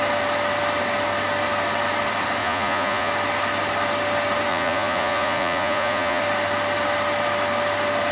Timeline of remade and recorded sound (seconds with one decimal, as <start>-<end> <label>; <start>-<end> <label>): 0.0-2.4 recorded; 2.4-3.1 remade; 3.1-4.5 recorded; 4.5-6.2 remade; 6.2-8.1 recorded